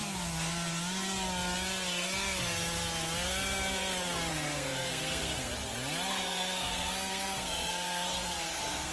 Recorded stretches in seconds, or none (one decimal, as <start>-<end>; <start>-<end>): 0.0-4.3; 5.5-6.1